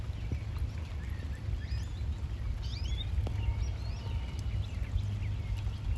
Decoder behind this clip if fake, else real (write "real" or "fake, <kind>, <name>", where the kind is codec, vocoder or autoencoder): real